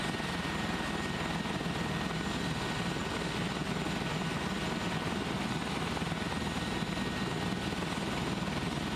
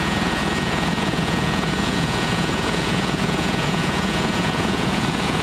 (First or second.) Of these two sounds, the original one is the first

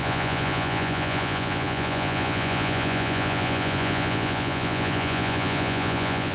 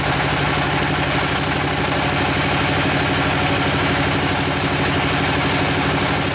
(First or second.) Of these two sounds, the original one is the second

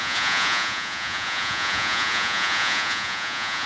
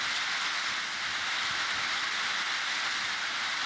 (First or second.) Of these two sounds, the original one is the second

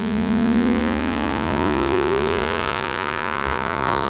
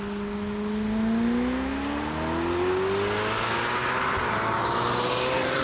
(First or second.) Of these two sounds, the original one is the second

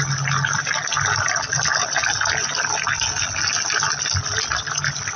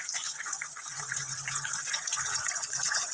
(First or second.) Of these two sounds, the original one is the first